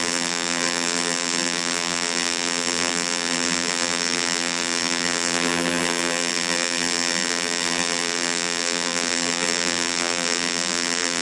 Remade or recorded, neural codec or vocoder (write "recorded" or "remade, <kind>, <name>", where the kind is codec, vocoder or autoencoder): remade, vocoder, BigVGAN v2